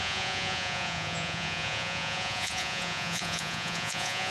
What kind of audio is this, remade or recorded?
remade